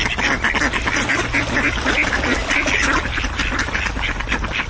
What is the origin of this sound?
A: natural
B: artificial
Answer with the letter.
A